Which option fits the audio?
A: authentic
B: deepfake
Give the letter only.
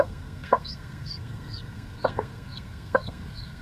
B